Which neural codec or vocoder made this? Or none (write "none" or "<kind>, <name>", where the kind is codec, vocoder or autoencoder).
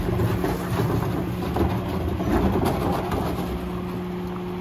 none